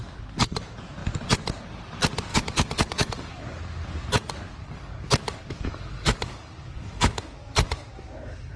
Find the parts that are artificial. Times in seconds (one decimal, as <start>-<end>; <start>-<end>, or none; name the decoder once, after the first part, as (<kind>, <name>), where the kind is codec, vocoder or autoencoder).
2.3-3.6 (codec, DAC); 4.6-7.2